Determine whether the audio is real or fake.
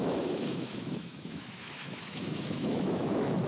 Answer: fake